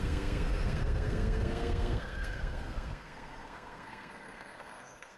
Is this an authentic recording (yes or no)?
no